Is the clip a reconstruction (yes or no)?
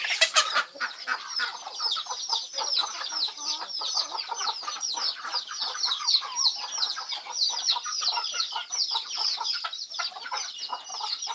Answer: no